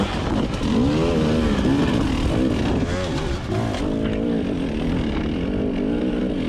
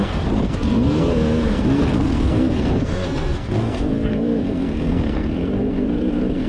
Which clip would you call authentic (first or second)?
first